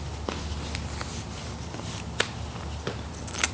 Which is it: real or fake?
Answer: real